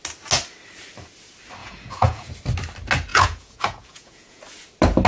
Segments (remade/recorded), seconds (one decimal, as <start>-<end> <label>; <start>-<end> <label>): 0.0-1.6 recorded; 1.6-2.3 remade; 2.3-3.1 recorded; 3.1-4.4 remade; 4.4-5.1 recorded